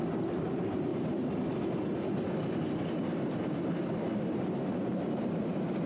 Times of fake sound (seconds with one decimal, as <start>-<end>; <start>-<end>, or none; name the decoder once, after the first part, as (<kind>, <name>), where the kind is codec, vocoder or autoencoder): 0.0-0.9 (vocoder, BigVGAN v2); 4.4-5.9